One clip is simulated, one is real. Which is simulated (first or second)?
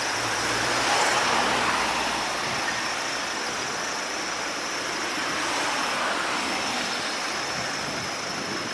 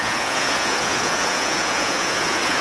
second